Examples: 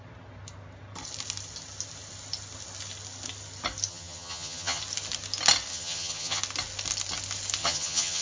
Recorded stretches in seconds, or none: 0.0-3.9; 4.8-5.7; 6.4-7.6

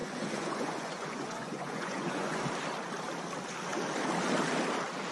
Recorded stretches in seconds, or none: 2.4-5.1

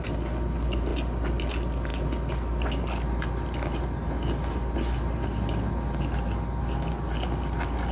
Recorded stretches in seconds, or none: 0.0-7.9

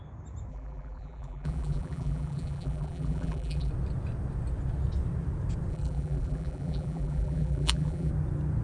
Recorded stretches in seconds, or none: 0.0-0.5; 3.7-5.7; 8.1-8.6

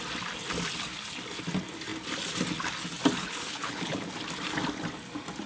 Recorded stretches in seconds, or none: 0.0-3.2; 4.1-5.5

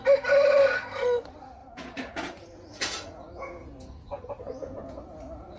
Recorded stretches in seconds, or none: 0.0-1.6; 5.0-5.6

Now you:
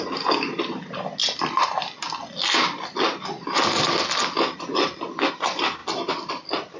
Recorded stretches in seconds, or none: 0.0-6.8

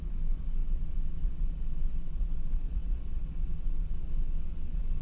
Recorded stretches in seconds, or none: none